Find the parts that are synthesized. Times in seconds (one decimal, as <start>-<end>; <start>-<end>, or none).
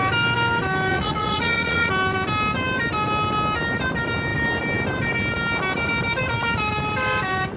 0.9-1.9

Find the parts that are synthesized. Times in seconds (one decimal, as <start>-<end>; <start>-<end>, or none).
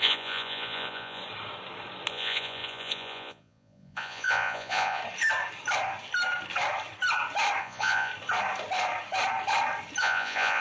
0.0-1.2; 2.1-5.0; 7.6-8.1; 10.0-10.6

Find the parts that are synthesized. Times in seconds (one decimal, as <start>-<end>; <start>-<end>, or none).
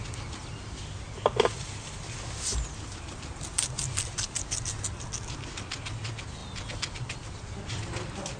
none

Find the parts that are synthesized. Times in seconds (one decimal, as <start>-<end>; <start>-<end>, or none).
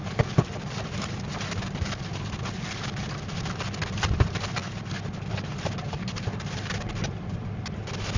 none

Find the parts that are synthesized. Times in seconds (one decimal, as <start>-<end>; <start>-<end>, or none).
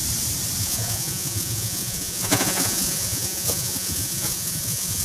0.6-5.0